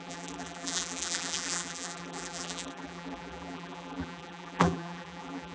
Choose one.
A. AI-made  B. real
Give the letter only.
A